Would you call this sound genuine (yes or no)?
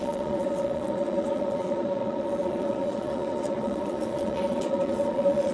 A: no